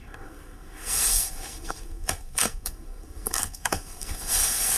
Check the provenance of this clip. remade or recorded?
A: remade